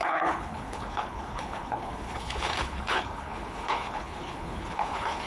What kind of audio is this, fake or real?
fake